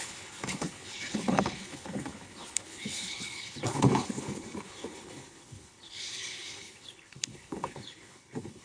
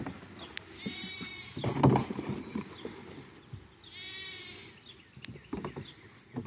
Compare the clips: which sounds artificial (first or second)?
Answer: first